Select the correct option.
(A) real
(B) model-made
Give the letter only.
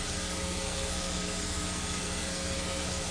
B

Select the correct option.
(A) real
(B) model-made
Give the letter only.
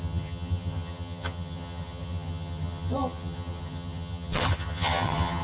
B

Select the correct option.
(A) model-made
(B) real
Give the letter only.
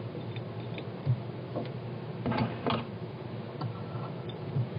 B